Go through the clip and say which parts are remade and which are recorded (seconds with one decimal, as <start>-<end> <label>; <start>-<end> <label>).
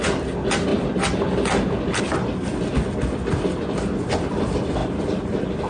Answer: 0.0-5.7 recorded